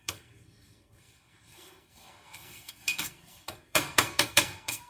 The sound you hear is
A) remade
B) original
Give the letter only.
A